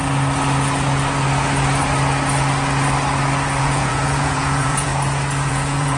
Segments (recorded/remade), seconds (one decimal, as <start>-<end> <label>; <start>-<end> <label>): 0.0-3.6 recorded; 3.6-4.9 remade; 4.9-5.5 recorded; 5.5-6.0 remade